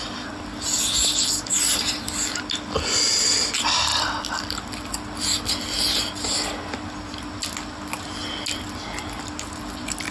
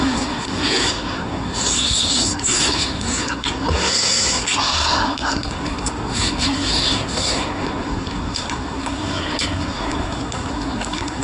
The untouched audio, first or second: first